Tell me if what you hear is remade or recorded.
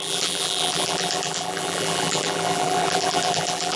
remade